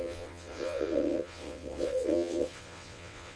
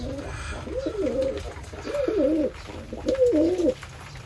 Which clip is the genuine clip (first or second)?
second